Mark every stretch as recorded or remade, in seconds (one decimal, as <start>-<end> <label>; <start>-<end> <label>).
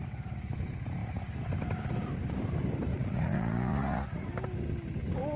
0.0-2.9 recorded; 2.9-4.3 remade; 4.3-5.4 recorded